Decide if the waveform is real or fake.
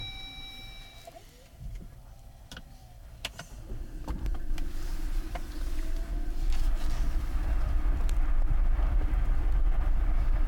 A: fake